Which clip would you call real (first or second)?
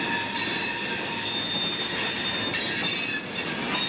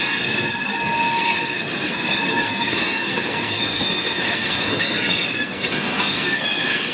first